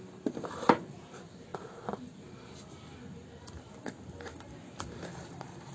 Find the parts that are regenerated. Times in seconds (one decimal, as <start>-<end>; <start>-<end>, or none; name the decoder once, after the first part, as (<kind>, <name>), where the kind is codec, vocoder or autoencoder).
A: none